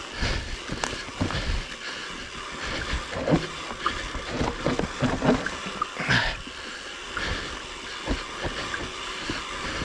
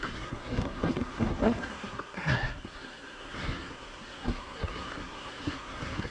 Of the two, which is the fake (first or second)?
second